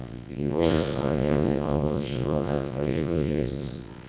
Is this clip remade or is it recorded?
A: remade